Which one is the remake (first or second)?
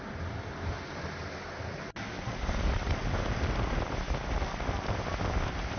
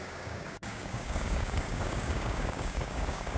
second